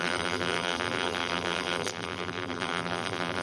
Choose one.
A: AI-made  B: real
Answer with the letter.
A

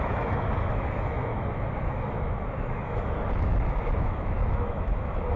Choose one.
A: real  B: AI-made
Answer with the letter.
B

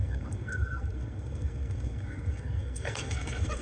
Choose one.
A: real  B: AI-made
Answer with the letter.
B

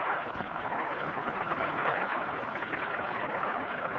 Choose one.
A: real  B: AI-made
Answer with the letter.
B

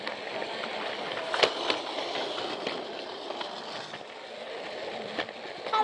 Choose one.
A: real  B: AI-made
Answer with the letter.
A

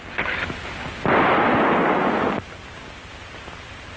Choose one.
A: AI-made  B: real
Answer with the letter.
B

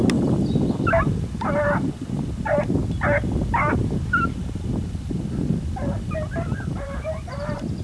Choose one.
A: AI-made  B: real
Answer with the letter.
B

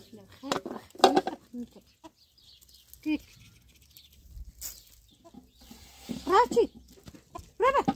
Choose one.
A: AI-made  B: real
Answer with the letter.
B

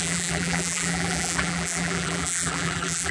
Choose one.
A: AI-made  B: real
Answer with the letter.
A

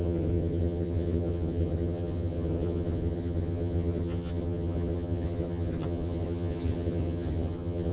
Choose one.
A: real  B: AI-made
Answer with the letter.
B